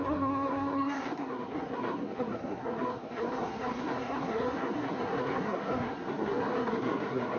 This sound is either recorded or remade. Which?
remade